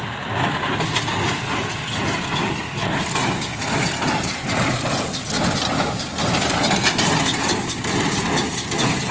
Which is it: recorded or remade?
recorded